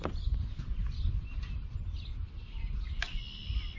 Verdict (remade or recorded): recorded